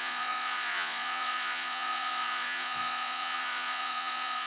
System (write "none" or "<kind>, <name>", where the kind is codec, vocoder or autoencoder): vocoder, Vocos